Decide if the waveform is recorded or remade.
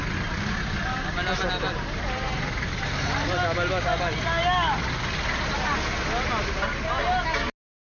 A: recorded